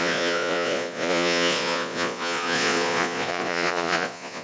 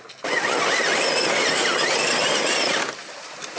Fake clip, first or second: first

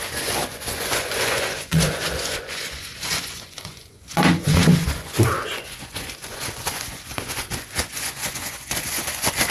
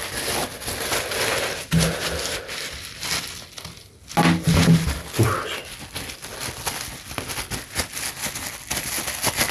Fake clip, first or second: first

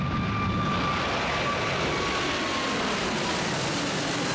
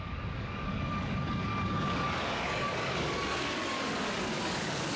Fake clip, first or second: second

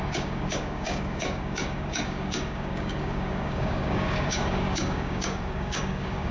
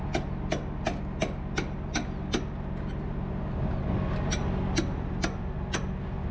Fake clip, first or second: first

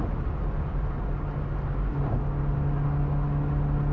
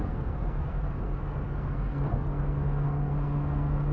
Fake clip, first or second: second